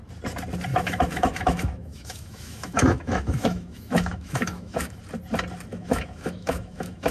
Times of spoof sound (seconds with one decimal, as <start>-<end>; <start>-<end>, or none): 0.7-5.0; 5.7-7.1

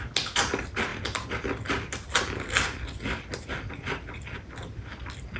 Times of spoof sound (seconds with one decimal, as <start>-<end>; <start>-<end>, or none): none